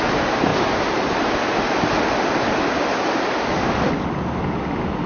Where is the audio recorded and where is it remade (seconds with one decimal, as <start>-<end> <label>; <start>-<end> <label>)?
0.0-5.1 recorded

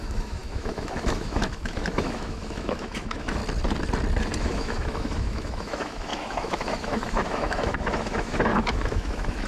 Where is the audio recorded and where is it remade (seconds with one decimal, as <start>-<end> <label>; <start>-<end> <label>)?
0.0-3.4 remade; 3.4-4.4 recorded; 4.4-9.5 remade

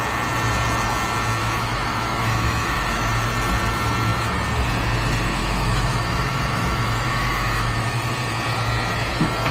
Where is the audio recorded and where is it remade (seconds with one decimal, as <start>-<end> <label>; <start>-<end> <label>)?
0.0-1.4 recorded; 1.4-3.3 remade; 3.3-5.4 recorded; 5.4-8.1 remade; 8.1-9.5 recorded

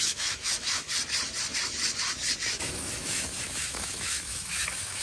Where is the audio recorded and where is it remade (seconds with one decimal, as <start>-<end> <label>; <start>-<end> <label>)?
0.0-0.9 remade; 0.9-2.5 recorded; 2.5-5.0 remade

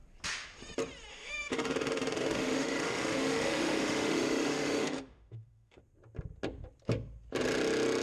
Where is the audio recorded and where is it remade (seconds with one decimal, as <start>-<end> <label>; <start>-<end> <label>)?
0.0-1.1 recorded; 1.1-5.8 remade; 5.8-8.0 recorded

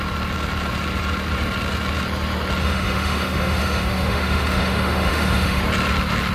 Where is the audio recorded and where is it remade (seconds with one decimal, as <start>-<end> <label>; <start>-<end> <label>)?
0.0-2.6 recorded; 2.6-5.6 remade; 5.6-6.3 recorded

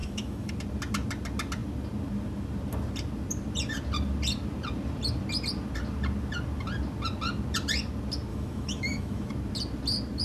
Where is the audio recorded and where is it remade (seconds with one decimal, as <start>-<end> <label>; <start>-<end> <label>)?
0.0-0.5 remade; 0.5-8.3 recorded; 8.3-9.3 remade; 9.3-10.2 recorded

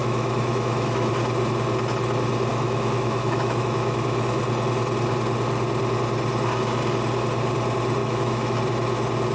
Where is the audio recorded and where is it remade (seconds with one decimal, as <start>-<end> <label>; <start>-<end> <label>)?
0.0-1.1 remade; 1.1-2.5 recorded; 2.5-4.4 remade; 4.4-8.0 recorded; 8.0-8.6 remade; 8.6-9.3 recorded